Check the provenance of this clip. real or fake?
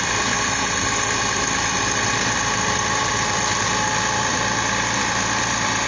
fake